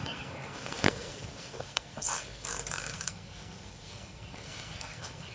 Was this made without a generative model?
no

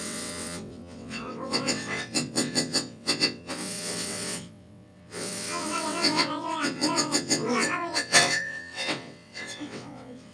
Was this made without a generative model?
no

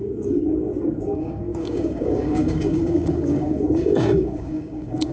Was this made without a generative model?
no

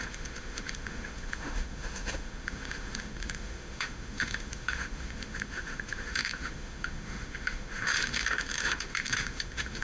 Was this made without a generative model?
no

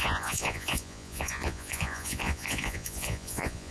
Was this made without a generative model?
no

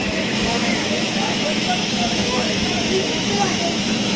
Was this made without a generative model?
no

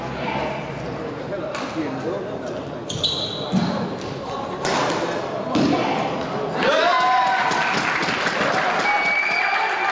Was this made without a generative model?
yes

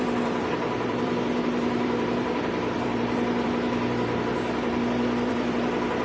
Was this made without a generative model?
no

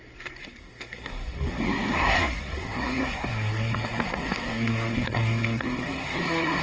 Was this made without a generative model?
no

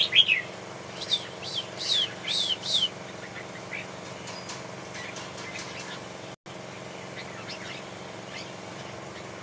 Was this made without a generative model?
yes